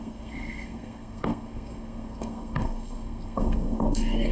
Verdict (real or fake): fake